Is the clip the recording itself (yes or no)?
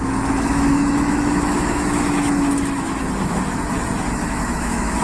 no